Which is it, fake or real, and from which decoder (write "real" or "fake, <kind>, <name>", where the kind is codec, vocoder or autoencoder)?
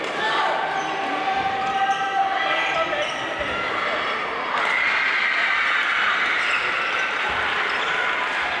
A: real